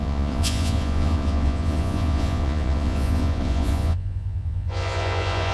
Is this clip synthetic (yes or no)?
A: yes